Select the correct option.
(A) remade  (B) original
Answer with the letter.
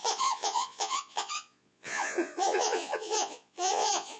A